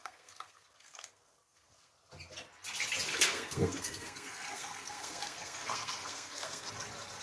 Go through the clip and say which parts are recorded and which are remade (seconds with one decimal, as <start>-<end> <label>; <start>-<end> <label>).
0.0-1.9 remade; 1.9-3.1 recorded; 3.1-6.7 remade; 6.7-7.2 recorded